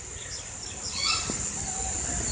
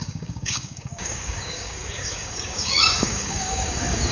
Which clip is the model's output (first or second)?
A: second